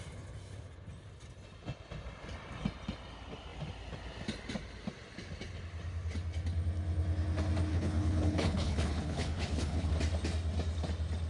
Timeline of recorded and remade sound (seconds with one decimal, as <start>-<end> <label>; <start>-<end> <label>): 0.0-7.7 recorded; 7.7-9.9 remade; 9.9-11.3 recorded